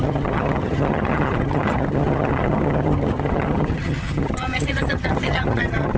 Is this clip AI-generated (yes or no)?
yes